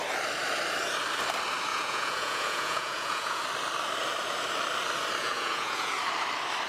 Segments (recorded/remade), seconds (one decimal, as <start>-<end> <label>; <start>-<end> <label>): 0.0-1.7 recorded; 1.7-3.4 remade; 3.4-5.2 recorded; 5.2-5.9 remade; 5.9-6.7 recorded